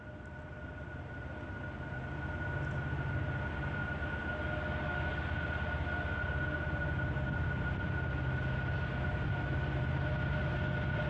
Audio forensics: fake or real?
real